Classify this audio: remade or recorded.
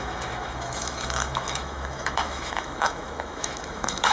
remade